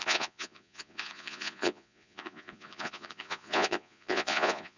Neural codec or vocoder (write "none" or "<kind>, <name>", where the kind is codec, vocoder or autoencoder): vocoder, Vocos